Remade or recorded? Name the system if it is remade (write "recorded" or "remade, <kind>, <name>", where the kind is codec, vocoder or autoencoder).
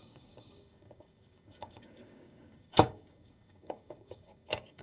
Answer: remade, codec, DAC